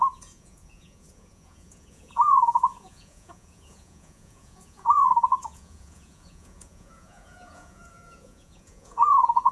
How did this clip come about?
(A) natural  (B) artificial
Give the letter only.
B